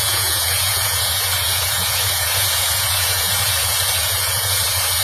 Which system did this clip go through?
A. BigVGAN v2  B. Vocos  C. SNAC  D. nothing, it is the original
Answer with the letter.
B